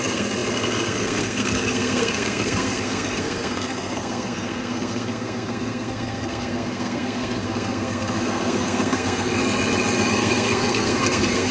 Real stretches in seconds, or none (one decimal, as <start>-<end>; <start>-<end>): 9.4-10.1